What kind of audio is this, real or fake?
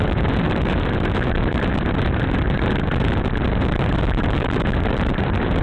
fake